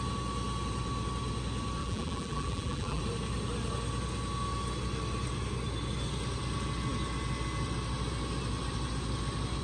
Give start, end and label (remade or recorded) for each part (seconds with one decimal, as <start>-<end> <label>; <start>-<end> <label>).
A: 0.0-1.8 recorded; 1.8-3.0 remade; 3.0-9.6 recorded